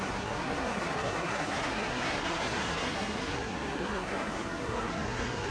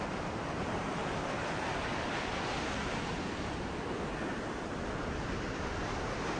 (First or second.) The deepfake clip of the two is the first